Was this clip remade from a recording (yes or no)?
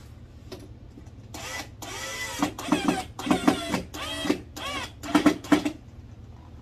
no